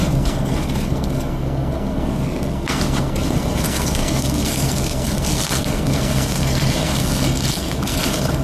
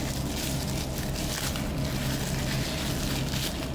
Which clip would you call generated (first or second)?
first